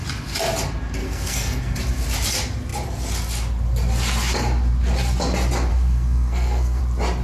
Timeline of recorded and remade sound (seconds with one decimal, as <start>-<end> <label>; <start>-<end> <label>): 0.0-1.0 recorded; 1.0-1.8 remade; 1.8-5.7 recorded; 5.7-6.8 remade; 6.8-7.2 recorded